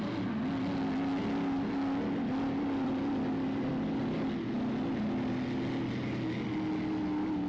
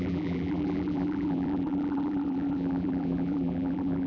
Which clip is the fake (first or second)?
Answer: second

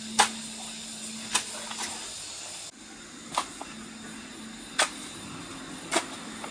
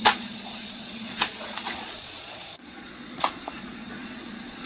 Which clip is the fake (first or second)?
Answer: second